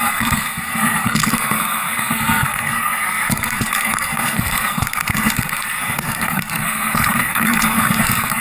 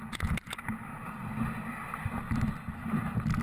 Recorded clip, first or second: second